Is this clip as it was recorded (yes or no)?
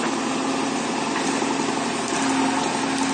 yes